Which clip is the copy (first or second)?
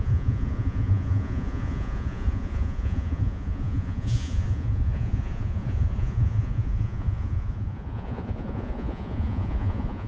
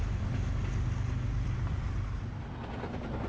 first